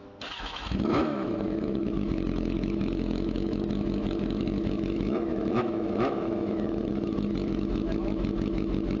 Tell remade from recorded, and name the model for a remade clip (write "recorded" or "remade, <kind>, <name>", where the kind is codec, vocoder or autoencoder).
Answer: remade, autoencoder, DAC-VAE